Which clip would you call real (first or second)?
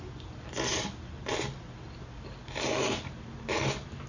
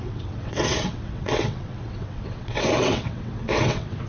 first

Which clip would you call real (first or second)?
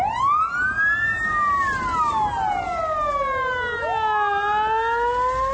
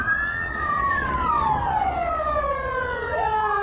first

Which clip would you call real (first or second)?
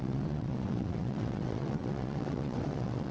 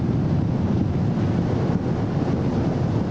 second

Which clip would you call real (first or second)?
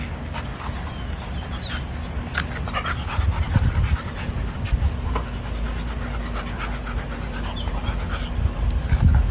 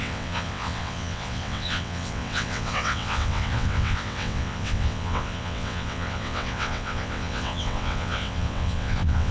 first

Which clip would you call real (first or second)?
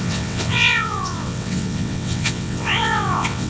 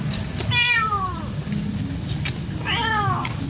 second